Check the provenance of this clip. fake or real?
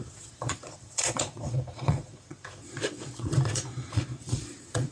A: fake